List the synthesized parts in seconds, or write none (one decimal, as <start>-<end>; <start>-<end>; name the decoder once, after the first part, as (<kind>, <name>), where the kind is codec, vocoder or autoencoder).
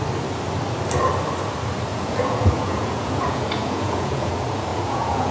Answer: 1.9-4.3 (vocoder, Vocos); 4.7-5.3